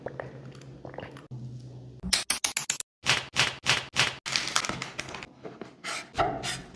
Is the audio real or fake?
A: real